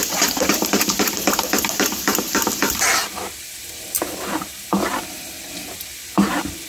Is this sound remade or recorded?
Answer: recorded